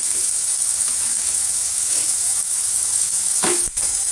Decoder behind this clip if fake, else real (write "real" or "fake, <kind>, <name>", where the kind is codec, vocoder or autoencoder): fake, autoencoder, DAC-VAE